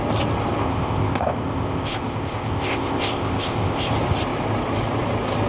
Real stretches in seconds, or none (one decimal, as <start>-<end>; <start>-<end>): 0.0-0.6; 3.9-5.5